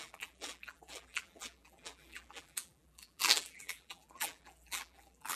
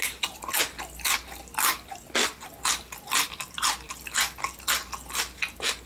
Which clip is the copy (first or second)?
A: first